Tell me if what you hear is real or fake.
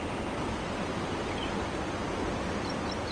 real